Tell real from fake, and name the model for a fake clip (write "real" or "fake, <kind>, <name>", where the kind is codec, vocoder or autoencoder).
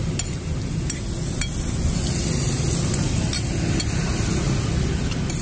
real